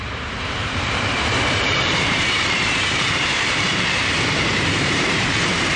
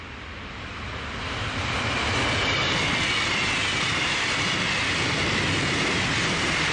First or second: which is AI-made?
first